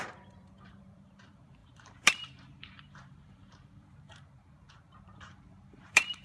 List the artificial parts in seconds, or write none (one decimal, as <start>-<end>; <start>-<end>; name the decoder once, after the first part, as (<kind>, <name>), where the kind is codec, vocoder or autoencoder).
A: 0.0-6.2 (vocoder, BigVGAN v2)